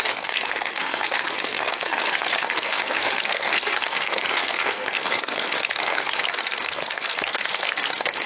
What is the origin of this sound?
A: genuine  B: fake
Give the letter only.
B